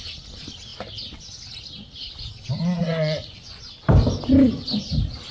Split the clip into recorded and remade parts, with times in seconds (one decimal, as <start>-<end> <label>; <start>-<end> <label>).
0.0-2.8 recorded; 2.8-3.7 remade; 3.7-5.3 recorded